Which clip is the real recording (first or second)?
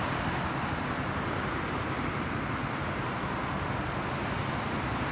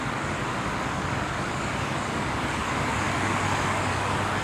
first